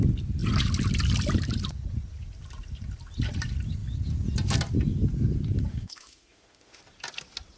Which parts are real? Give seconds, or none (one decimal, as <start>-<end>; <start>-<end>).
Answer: 0.0-5.7; 6.8-7.6